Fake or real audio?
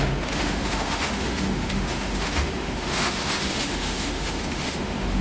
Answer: fake